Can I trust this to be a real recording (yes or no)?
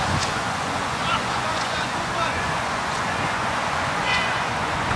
no